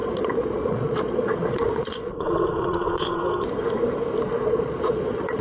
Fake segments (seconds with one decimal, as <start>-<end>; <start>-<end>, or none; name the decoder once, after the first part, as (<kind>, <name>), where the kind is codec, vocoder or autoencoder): 0.0-3.2 (vocoder, Vocos); 4.4-5.4